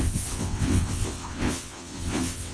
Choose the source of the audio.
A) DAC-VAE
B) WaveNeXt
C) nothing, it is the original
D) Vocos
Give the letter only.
B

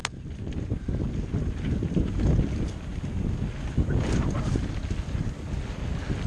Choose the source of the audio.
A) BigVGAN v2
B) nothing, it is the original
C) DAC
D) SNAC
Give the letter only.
B